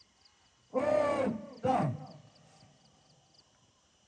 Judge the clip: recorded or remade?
recorded